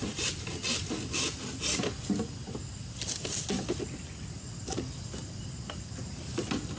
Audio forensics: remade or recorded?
recorded